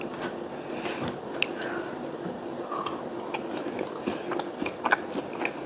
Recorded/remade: recorded